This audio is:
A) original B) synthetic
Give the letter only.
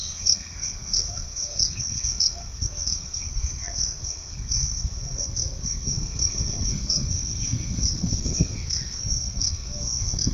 B